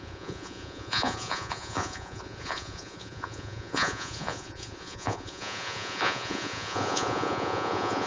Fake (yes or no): yes